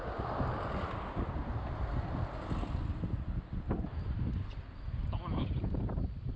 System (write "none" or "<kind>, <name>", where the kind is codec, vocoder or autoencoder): none